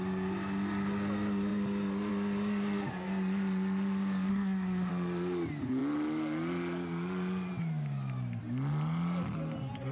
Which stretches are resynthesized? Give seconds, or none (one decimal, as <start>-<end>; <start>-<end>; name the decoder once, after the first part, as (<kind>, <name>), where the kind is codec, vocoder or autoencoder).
4.3-4.9 (codec, SNAC)